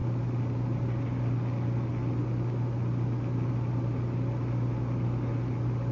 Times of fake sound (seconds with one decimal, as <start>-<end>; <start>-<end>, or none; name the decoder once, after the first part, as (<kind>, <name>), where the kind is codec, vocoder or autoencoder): none